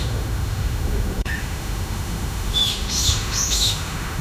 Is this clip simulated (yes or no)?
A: yes